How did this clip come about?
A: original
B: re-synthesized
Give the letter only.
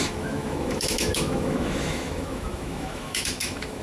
B